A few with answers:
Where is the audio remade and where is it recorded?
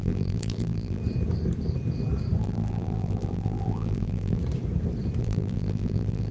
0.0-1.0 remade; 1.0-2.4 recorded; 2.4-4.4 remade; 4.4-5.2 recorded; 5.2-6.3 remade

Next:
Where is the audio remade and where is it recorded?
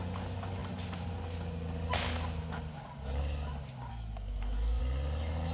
0.0-3.9 recorded; 3.9-4.8 remade; 4.8-5.5 recorded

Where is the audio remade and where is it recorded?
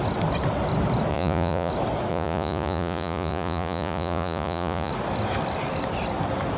0.0-1.1 recorded; 1.1-1.7 remade; 1.7-2.1 recorded; 2.1-4.9 remade; 4.9-6.6 recorded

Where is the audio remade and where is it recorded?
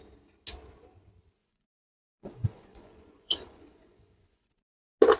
0.0-1.4 recorded; 1.4-4.5 remade; 4.5-5.2 recorded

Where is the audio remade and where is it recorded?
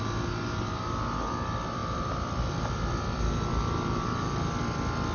0.0-1.8 recorded; 1.8-4.6 remade; 4.6-5.1 recorded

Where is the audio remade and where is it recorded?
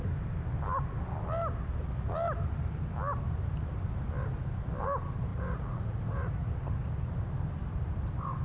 0.0-5.3 recorded; 5.3-6.5 remade; 6.5-8.4 recorded